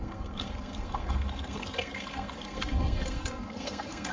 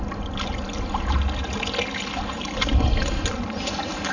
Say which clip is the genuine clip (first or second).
second